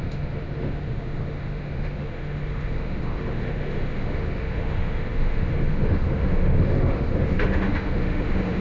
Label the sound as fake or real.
fake